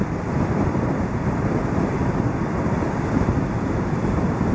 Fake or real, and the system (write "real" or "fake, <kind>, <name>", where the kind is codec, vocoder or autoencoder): fake, vocoder, BigVGAN v2